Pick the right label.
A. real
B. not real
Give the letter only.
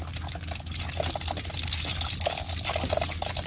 A